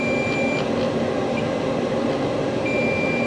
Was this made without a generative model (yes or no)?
yes